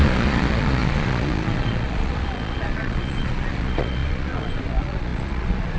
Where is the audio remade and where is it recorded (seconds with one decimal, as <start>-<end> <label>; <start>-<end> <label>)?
0.0-5.8 remade